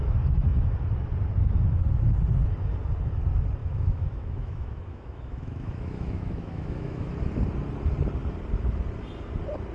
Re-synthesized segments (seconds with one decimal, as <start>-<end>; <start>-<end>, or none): 3.6-7.1

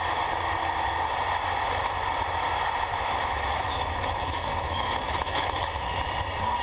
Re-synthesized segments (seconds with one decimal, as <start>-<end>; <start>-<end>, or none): 2.9-6.0

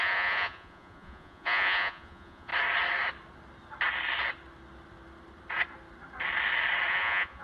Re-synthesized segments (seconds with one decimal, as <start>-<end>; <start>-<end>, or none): 0.0-2.5; 6.9-7.4

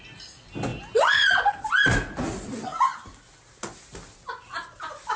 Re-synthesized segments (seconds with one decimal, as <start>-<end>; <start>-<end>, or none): none

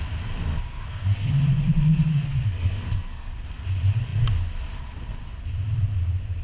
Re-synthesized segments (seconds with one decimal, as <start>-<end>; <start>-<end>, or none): 0.5-1.3; 2.1-3.3

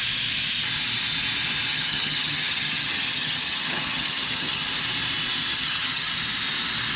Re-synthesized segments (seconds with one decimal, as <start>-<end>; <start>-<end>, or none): 1.7-4.6; 5.5-6.1

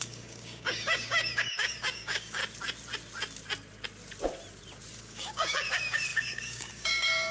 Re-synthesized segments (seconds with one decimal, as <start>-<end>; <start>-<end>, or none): 0.0-2.4; 5.0-7.3